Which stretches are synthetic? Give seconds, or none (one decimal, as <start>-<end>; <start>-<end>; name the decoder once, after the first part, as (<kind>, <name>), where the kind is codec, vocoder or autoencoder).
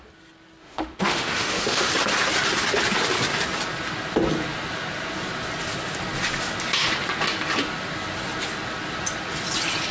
0.6-1.9 (autoencoder, DAC-VAE)